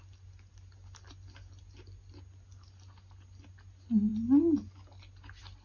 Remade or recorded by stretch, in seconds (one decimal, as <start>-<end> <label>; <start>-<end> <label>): 0.0-5.6 recorded